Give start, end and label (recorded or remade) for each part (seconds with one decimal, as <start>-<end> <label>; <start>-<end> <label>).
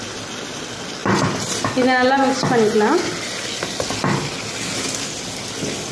0.0-5.9 recorded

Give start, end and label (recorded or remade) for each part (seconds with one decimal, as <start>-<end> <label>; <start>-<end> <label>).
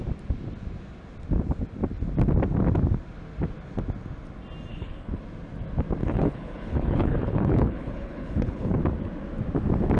0.0-4.7 recorded; 4.7-5.2 remade; 5.2-6.0 recorded; 6.0-8.8 remade; 8.8-10.0 recorded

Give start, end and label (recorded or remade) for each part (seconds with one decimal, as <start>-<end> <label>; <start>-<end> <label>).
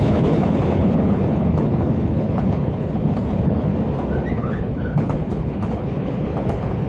0.0-3.7 remade; 3.7-4.3 recorded; 4.3-6.9 remade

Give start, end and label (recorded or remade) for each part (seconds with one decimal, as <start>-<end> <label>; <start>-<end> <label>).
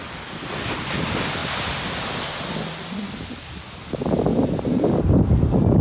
0.0-5.8 recorded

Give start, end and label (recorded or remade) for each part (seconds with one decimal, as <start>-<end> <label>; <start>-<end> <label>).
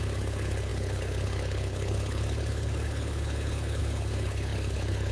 0.0-5.1 remade